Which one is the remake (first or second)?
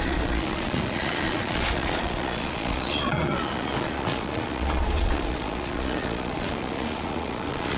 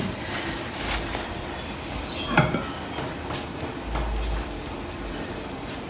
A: first